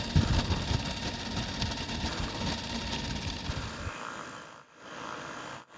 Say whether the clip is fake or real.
real